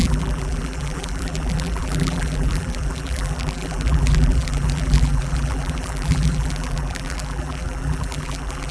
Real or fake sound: fake